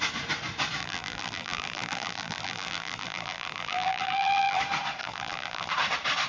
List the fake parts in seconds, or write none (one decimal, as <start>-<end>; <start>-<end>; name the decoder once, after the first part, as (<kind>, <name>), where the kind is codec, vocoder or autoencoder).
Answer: 0.8-4.6 (vocoder, BigVGAN v2); 5.0-5.7